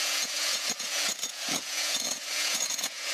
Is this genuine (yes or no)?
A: no